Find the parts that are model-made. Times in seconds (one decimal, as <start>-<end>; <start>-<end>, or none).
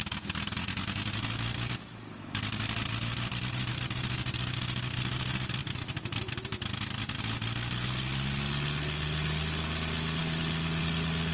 5.6-6.7; 10.2-10.8